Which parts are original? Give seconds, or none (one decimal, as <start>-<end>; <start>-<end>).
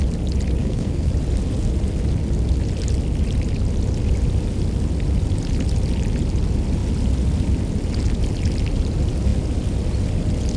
0.0-0.6; 1.1-10.6